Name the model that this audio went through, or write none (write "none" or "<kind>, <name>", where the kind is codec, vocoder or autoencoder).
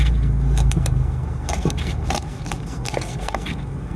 codec, SNAC